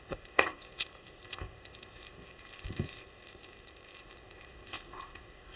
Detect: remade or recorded remade